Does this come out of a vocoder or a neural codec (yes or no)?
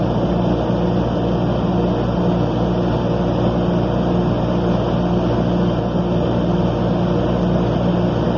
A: no